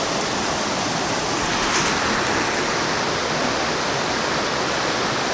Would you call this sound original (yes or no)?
yes